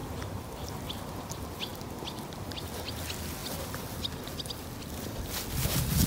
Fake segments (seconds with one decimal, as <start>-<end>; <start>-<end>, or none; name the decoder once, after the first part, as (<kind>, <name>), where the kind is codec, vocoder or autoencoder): 0.0-0.7 (vocoder, BigVGAN v2)